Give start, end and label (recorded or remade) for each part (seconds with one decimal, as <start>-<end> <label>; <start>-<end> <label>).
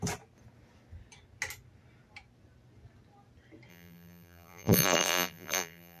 0.0-3.7 recorded; 3.7-6.0 remade